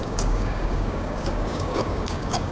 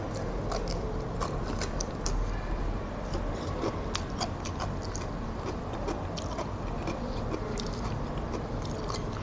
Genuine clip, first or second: second